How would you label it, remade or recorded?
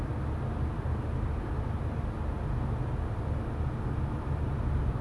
recorded